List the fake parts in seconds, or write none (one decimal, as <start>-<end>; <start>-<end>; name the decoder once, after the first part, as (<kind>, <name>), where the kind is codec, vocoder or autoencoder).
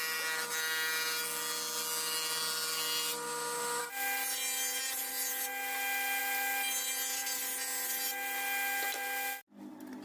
none